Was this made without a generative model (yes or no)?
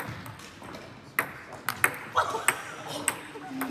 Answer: yes